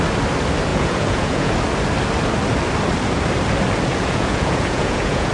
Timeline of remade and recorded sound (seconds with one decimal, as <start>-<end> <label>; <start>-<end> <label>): 0.0-0.7 recorded; 0.7-1.5 remade; 1.5-3.9 recorded; 3.9-5.3 remade